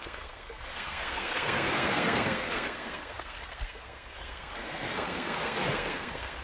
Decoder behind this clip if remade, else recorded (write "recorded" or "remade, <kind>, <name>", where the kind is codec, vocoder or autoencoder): remade, codec, SNAC